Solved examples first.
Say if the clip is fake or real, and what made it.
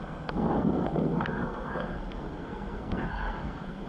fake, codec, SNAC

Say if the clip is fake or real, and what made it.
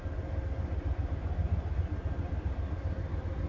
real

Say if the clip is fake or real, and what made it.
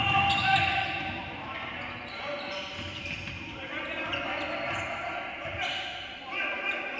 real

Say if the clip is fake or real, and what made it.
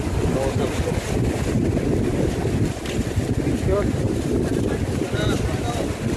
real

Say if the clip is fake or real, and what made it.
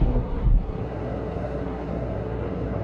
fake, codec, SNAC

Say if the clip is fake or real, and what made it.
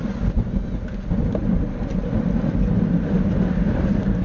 real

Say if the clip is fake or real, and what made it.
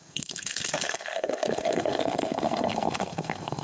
fake, codec, SNAC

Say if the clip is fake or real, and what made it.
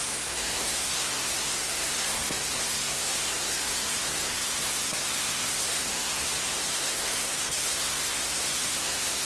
fake, codec, SNAC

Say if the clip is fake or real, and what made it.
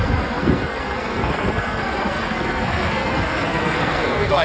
fake, codec, SNAC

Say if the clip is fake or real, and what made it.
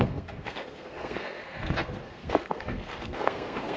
fake, codec, SNAC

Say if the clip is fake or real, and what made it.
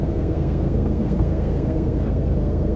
fake, codec, SNAC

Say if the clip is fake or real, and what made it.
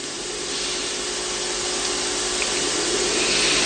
real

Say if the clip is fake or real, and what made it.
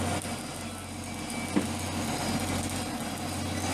real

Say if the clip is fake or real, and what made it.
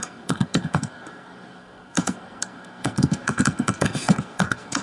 fake, codec, SNAC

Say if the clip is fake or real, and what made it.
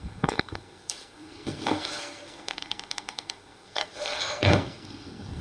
fake, codec, SNAC